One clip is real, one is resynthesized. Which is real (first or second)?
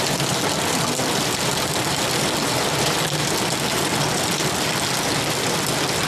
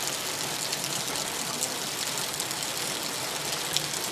second